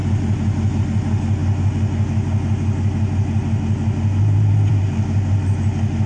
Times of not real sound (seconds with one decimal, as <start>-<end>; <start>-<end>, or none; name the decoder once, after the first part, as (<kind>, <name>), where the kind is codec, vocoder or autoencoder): none